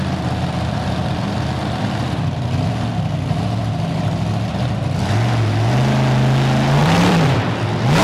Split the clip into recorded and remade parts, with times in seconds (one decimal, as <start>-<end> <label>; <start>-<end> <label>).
0.0-6.8 recorded; 6.8-8.0 remade